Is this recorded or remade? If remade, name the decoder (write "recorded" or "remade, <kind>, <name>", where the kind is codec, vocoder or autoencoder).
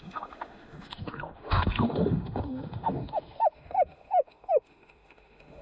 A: remade, autoencoder, DAC-VAE